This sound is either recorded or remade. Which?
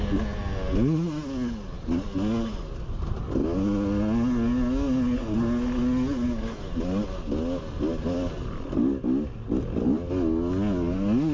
recorded